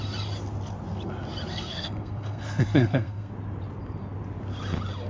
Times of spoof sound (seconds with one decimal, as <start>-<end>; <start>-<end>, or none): 1.5-3.3